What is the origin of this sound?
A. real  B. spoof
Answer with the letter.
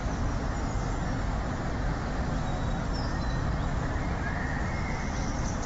A